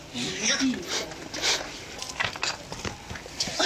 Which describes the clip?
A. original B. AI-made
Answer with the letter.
A